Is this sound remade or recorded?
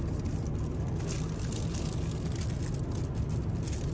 recorded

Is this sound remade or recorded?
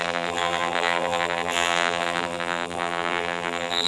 remade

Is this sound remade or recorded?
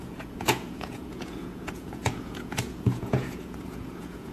remade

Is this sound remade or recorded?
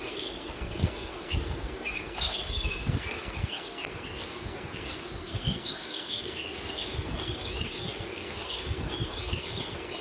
remade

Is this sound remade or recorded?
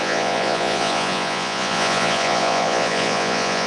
remade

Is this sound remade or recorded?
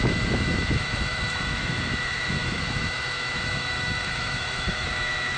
remade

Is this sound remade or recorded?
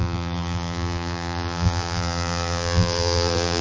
remade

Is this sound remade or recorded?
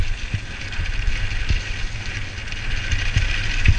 recorded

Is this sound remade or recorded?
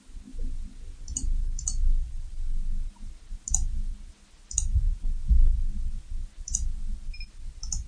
recorded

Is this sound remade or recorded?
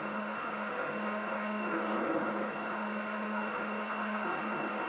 remade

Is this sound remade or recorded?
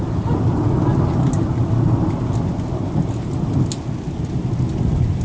recorded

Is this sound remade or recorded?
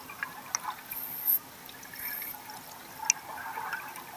recorded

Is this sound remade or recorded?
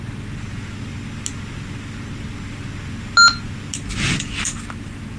recorded